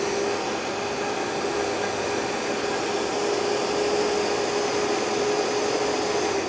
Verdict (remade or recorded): recorded